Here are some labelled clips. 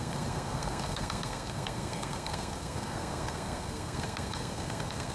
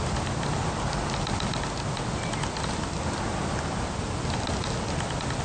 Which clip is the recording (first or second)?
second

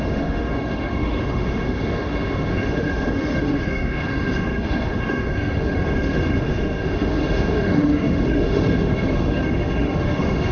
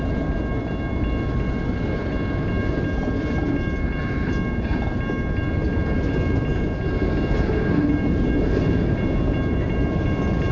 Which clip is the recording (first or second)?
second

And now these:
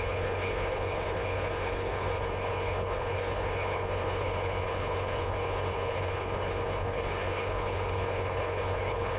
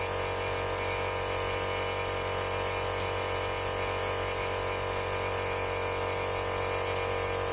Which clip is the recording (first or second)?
second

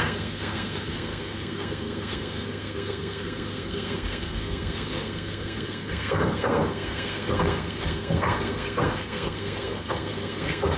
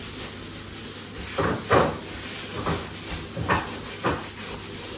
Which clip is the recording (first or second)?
second